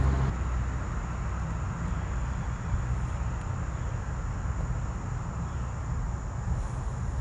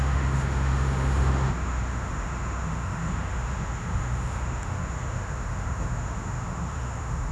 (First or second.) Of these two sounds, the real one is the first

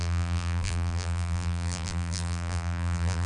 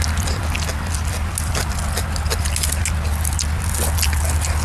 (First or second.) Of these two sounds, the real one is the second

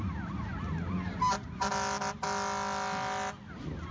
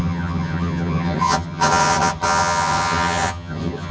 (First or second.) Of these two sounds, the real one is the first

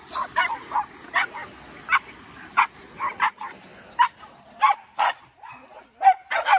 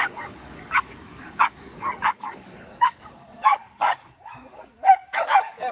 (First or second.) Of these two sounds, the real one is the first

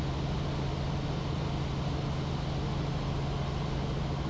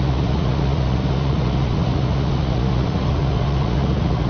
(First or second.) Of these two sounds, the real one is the first